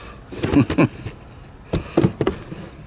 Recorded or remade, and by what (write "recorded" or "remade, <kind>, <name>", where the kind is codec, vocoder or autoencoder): recorded